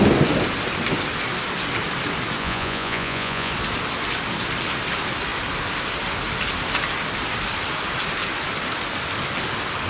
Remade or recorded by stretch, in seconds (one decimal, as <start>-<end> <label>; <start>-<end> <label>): 0.0-2.4 recorded; 2.4-3.5 remade; 3.5-9.9 recorded